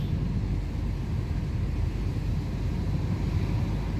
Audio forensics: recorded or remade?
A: recorded